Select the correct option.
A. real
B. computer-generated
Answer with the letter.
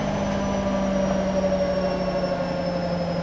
A